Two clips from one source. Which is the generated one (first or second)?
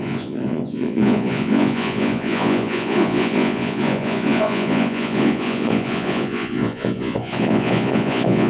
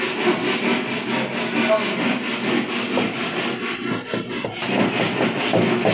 first